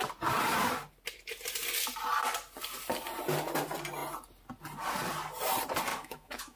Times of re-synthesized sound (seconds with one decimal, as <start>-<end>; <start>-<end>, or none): 5.9-6.6